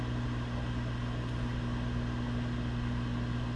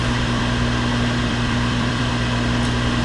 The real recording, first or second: first